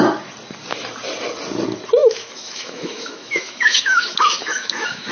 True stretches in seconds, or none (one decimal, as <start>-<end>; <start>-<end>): 0.0-2.0